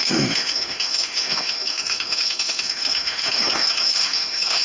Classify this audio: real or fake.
fake